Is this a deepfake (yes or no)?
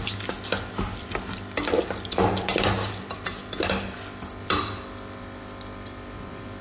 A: no